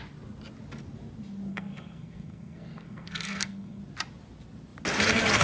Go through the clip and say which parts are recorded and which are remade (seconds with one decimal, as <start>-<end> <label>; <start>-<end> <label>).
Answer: 0.0-1.5 recorded; 1.5-3.8 remade; 3.8-5.4 recorded